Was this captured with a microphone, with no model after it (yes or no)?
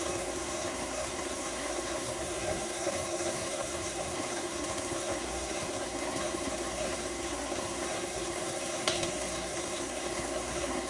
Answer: no